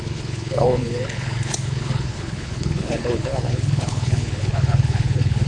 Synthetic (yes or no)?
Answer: yes